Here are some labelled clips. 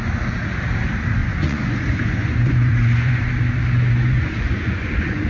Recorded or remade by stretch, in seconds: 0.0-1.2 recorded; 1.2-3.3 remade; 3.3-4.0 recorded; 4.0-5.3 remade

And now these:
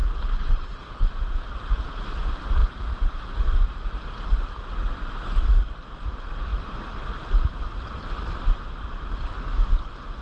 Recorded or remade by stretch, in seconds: 0.0-1.1 remade; 1.1-10.2 recorded